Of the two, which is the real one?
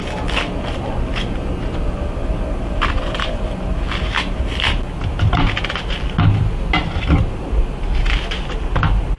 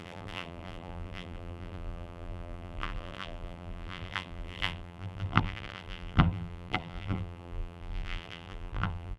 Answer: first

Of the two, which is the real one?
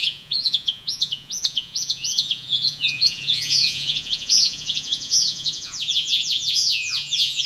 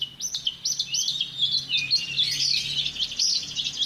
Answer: second